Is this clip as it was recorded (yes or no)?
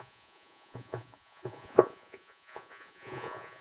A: no